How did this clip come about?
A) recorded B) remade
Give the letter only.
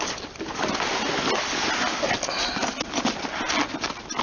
A